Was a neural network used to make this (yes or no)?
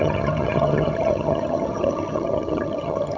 yes